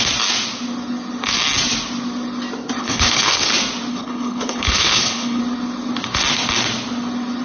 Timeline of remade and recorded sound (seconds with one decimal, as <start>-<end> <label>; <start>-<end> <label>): 0.0-2.8 recorded; 2.8-3.5 remade; 3.5-3.9 recorded; 3.9-5.4 remade; 5.4-7.4 recorded